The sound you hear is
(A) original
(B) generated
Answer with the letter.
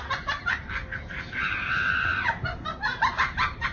B